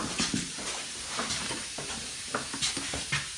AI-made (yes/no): yes